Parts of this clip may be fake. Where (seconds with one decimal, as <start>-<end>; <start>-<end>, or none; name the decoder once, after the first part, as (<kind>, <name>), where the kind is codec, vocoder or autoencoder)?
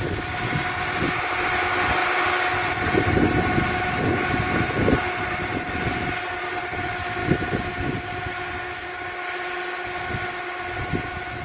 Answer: none